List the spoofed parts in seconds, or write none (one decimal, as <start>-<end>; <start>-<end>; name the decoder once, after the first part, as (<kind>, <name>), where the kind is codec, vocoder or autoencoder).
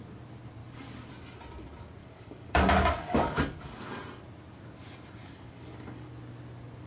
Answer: 0.6-1.1 (codec, DAC); 2.0-4.0; 5.2-6.1